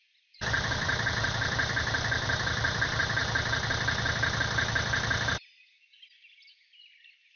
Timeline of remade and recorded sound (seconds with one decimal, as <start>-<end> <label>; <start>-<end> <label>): 0.0-3.2 remade; 3.2-6.8 recorded; 6.8-7.4 remade